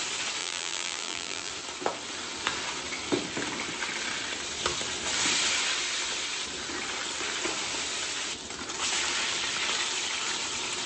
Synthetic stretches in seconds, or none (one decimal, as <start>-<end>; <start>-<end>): 0.4-1.5